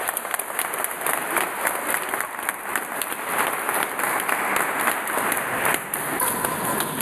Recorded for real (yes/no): yes